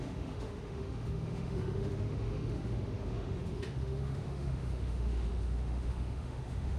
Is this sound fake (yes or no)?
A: yes